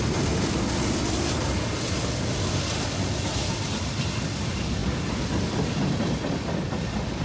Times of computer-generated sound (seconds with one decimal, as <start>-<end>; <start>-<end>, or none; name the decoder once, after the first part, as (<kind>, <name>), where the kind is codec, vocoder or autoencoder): none